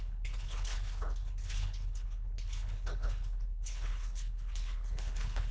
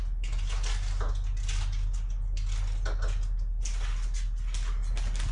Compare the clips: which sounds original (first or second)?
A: second